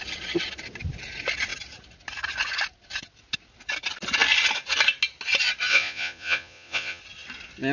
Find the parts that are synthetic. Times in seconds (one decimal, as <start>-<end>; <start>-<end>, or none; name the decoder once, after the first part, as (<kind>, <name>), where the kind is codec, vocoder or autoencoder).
5.7-7.0 (vocoder, Vocos)